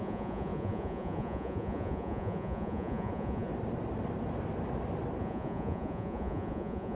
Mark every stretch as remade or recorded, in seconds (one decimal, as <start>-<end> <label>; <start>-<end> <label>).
0.0-3.5 remade; 3.5-5.2 recorded; 5.2-6.9 remade